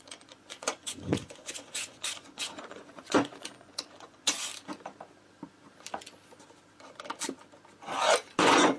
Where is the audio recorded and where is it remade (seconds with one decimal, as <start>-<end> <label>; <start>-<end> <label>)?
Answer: 0.0-4.5 remade; 4.5-8.4 recorded; 8.4-8.8 remade